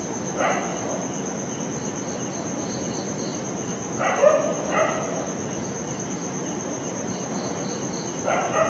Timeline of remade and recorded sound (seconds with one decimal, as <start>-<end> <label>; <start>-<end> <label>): 0.0-0.7 remade; 0.7-1.6 recorded; 1.6-8.7 remade